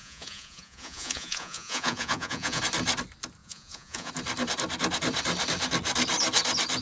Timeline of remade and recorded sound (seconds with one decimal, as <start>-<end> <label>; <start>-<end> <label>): 0.0-2.6 remade; 2.6-3.4 recorded; 3.4-4.1 remade; 4.1-6.8 recorded